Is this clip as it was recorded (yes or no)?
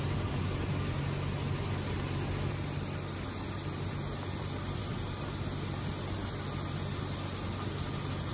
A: yes